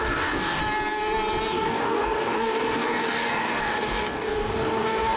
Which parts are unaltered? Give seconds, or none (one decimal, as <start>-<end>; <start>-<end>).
0.6-1.5